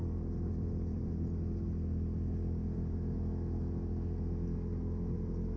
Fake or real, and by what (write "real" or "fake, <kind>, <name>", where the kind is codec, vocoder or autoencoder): real